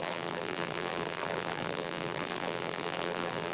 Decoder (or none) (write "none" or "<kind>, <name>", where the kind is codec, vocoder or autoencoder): vocoder, BigVGAN v2